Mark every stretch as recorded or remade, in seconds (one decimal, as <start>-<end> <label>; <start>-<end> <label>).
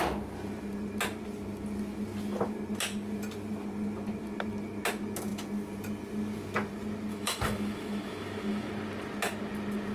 0.0-7.1 recorded; 7.1-8.7 remade; 8.7-9.9 recorded